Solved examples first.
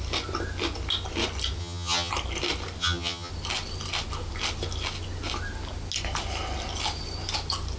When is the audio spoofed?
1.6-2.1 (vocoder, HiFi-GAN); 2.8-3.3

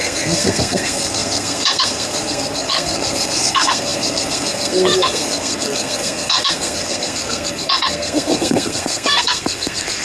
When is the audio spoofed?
0.0-10.0 (codec, SNAC)

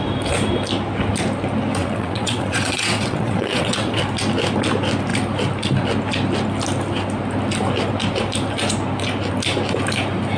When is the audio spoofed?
1.8-4.0 (vocoder, WaveNeXt)

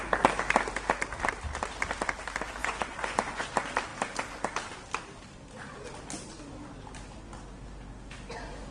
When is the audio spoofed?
2.6-3.5 (vocoder, Vocos)